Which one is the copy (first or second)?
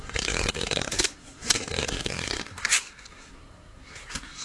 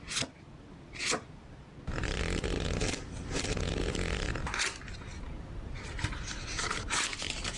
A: first